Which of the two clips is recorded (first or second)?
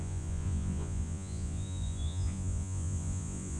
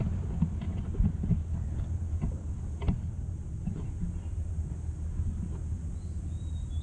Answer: second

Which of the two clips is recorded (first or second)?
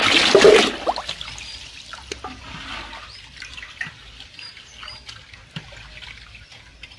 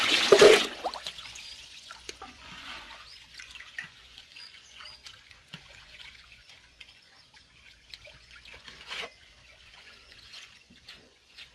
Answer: first